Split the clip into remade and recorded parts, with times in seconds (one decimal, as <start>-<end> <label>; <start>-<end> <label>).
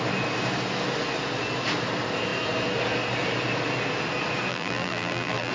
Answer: 0.0-4.5 recorded; 4.5-5.5 remade